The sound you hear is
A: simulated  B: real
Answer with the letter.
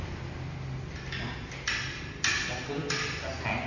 B